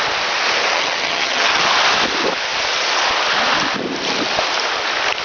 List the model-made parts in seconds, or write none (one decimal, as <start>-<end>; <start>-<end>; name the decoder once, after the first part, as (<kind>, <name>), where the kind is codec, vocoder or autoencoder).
0.7-1.6 (vocoder, HiFi-GAN)